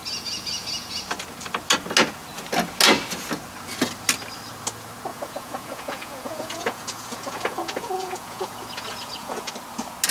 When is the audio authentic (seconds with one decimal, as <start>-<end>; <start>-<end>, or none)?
1.0-5.1; 9.5-10.1